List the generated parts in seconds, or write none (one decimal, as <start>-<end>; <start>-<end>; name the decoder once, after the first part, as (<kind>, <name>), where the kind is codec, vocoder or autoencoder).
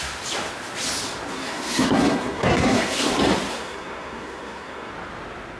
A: 1.3-3.1 (codec, SNAC); 3.5-4.9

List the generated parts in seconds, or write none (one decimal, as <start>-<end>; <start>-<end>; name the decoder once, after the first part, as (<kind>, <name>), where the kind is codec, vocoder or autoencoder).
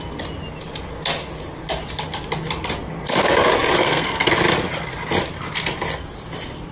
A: 3.8-4.3 (codec, SNAC)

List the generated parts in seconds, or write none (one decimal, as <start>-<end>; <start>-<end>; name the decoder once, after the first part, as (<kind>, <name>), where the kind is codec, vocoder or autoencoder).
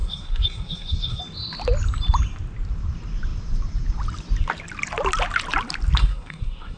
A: 0.0-1.2 (codec, SNAC); 6.0-6.8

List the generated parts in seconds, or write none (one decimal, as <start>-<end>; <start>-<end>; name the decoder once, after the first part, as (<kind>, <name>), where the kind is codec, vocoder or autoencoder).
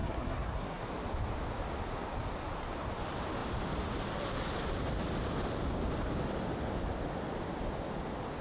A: 0.0-0.8 (codec, SNAC)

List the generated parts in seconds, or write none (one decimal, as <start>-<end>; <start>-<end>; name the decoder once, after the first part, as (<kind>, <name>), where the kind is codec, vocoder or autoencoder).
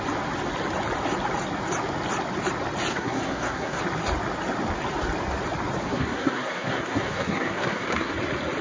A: 2.9-3.8 (codec, SNAC); 5.8-8.1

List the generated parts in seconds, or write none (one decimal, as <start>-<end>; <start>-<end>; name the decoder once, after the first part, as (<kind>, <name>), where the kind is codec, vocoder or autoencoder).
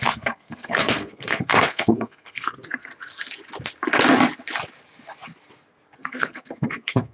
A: 0.0-2.9 (codec, SNAC); 6.0-7.1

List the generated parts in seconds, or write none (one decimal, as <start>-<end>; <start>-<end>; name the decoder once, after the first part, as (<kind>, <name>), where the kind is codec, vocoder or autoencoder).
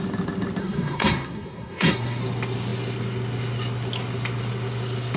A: 0.6-2.2 (codec, SNAC)